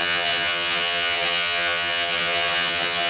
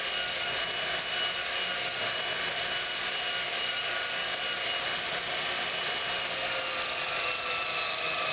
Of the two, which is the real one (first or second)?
second